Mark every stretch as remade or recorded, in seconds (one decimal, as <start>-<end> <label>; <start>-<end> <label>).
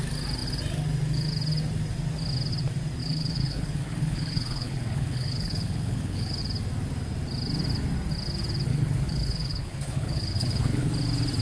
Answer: 0.0-3.0 recorded; 3.0-6.4 remade; 6.4-8.7 recorded; 8.7-10.9 remade; 10.9-11.4 recorded